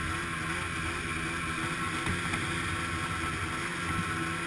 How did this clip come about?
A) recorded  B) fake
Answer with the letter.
A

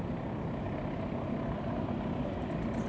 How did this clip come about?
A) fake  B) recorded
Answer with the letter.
B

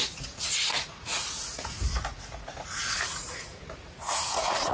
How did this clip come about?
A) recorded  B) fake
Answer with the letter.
B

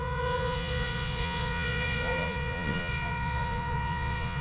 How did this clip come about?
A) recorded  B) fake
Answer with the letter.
B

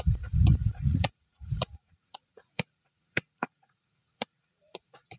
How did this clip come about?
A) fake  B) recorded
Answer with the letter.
A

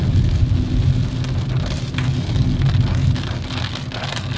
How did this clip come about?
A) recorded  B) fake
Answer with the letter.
A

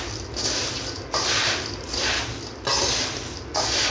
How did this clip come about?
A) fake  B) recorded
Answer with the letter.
B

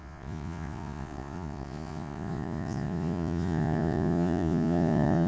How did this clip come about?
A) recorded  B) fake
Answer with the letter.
B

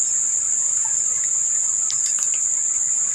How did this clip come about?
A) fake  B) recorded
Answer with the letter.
B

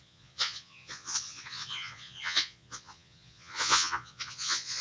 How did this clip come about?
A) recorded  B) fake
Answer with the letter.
B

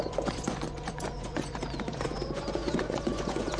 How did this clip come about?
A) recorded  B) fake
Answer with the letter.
B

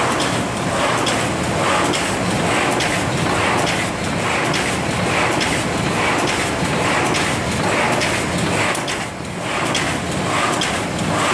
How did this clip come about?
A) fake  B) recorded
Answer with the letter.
B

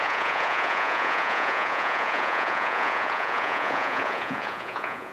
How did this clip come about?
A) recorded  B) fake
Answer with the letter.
B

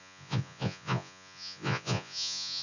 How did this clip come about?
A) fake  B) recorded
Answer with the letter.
A